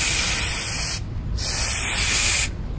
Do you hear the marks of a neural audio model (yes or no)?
no